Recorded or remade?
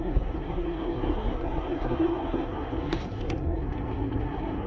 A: remade